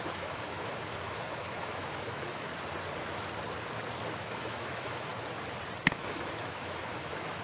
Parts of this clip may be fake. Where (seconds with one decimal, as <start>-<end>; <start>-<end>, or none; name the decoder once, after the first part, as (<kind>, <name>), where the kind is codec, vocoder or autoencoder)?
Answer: 0.0-2.5 (autoencoder, DAC-VAE); 4.2-5.1; 5.9-7.4